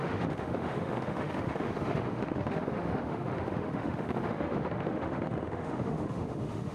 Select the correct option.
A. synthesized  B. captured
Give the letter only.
A